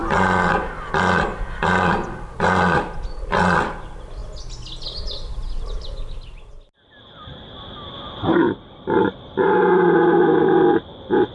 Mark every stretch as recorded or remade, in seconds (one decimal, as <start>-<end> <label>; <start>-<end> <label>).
0.0-11.3 recorded